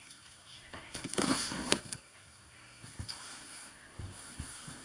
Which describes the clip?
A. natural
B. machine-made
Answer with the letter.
B